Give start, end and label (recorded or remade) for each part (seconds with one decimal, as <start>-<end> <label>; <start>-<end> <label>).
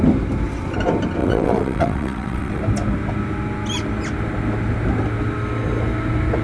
0.0-1.2 recorded; 1.2-2.6 remade; 2.6-6.4 recorded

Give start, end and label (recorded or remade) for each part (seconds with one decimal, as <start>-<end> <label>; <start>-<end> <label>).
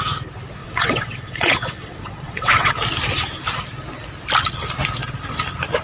0.0-0.6 recorded; 0.6-2.7 remade; 2.7-5.8 recorded